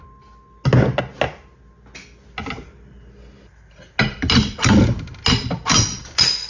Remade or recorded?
recorded